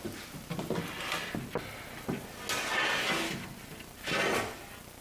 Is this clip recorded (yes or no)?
yes